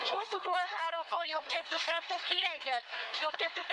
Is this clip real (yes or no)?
no